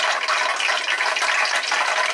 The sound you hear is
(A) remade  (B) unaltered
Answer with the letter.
B